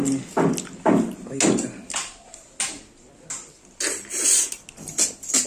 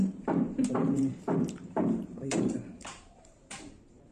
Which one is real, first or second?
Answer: first